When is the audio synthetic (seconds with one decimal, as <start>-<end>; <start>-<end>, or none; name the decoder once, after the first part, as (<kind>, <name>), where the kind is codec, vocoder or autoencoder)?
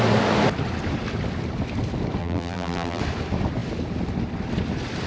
2.2-3.0 (vocoder, BigVGAN v2)